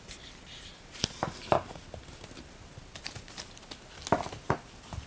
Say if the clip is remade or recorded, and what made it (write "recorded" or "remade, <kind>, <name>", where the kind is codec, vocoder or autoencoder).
recorded